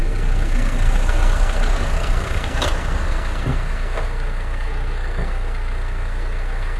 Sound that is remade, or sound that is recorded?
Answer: remade